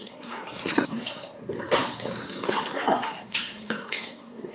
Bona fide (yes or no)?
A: no